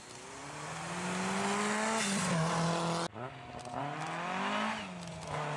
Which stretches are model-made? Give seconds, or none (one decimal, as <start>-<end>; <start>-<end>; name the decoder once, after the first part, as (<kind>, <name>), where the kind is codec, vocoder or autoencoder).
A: none